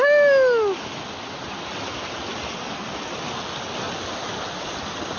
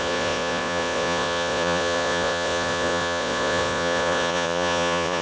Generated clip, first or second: second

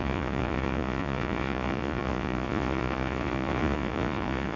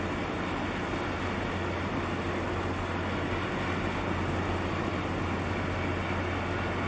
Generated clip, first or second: first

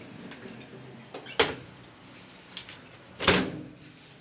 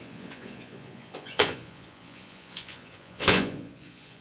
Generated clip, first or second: second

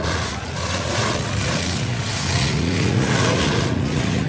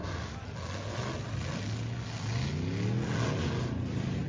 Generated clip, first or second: first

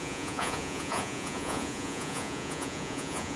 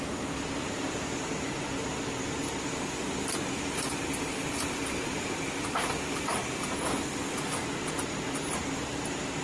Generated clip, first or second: first